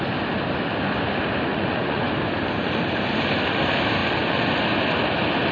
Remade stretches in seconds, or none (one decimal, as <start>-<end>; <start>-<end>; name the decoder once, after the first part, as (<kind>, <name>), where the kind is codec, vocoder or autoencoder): 1.5-2.1 (vocoder, Vocos); 4.0-4.5